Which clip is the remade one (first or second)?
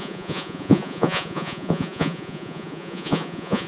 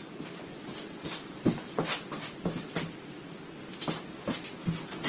first